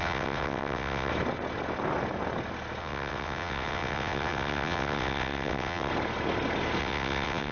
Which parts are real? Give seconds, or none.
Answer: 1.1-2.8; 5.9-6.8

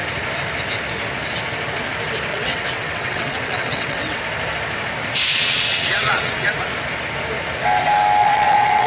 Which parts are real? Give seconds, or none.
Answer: 0.0-2.3; 4.2-5.3; 6.7-8.2

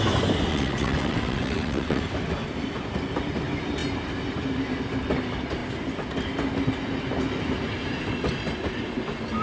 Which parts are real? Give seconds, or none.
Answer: 0.0-0.5; 2.0-9.4

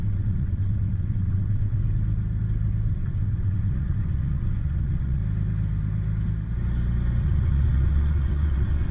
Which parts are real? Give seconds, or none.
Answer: 1.8-2.9; 5.2-7.2